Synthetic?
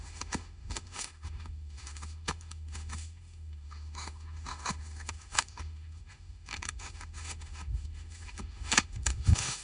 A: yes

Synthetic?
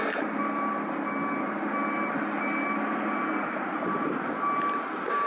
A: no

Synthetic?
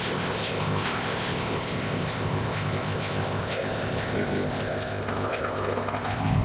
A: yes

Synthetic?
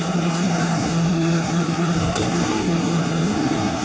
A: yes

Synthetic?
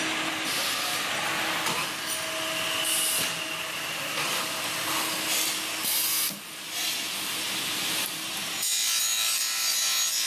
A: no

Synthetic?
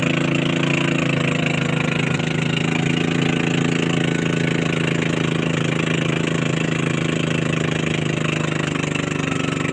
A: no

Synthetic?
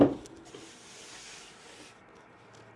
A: no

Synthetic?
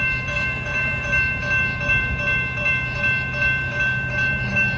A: yes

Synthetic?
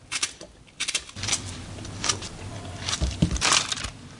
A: no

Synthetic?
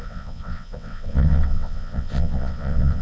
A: yes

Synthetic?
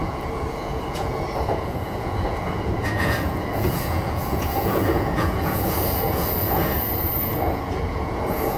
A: yes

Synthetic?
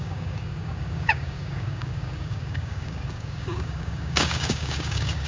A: yes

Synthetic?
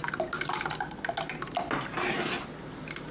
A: no